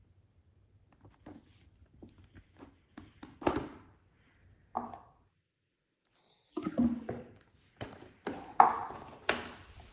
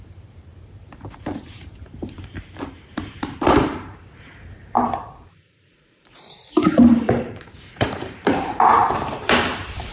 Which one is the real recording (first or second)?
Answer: first